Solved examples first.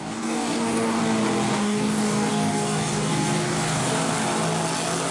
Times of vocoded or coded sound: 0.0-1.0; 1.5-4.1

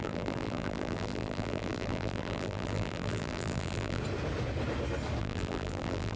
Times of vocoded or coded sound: 0.0-4.0; 5.2-6.2